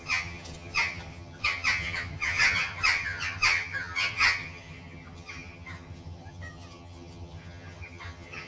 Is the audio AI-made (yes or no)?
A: yes